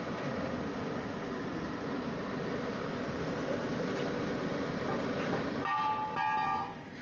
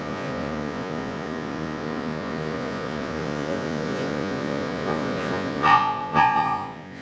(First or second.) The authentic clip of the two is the first